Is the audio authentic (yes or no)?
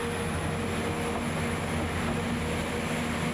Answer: yes